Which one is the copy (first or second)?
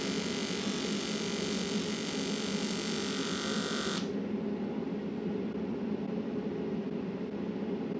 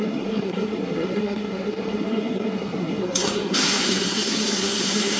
second